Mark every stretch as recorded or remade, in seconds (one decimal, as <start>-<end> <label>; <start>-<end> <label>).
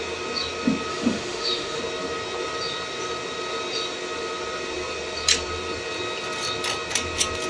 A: 0.0-0.9 recorded; 0.9-1.8 remade; 1.8-7.5 recorded